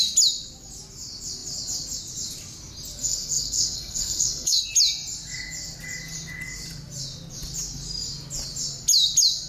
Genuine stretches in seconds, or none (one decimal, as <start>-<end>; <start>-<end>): 0.0-3.0; 4.6-9.5